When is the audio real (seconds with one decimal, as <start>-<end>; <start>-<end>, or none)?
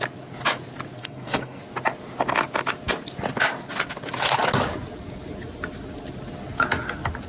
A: 0.0-1.0; 1.6-7.3